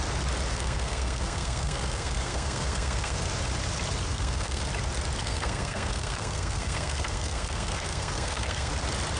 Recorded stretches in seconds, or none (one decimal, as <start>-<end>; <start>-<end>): 0.0-0.5; 3.3-4.1; 4.6-5.2; 8.7-9.2